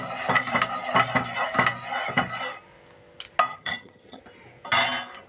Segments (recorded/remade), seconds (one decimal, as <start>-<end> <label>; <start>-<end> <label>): 0.0-3.5 recorded; 3.5-4.2 remade; 4.2-5.3 recorded